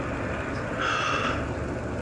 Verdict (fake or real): real